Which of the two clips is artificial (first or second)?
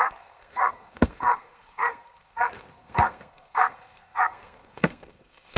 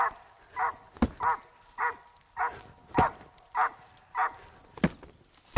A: first